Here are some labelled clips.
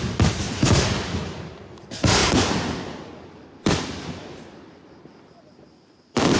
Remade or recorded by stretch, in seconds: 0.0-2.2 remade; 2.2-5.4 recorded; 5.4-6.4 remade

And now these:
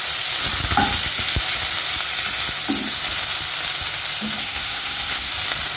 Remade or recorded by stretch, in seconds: 0.0-4.4 recorded; 4.4-5.3 remade; 5.3-5.8 recorded

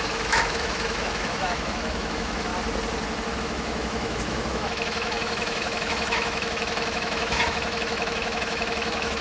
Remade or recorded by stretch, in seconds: 0.0-2.5 remade; 2.5-3.4 recorded; 3.4-9.2 remade

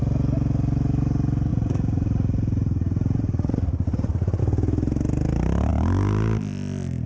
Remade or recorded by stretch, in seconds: 0.0-1.5 recorded; 1.5-4.4 remade; 4.4-7.1 recorded

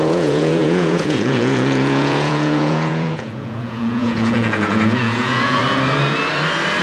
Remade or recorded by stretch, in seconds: 0.0-5.6 remade; 5.6-6.8 recorded

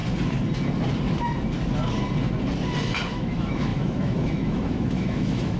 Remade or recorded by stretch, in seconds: 0.0-3.1 recorded; 3.1-5.6 remade